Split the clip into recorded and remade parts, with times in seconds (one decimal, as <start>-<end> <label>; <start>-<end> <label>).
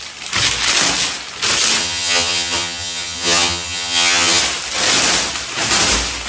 0.0-1.8 recorded; 1.8-4.4 remade; 4.4-6.3 recorded